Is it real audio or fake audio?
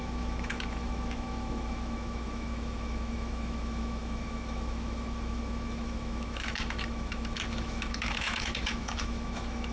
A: fake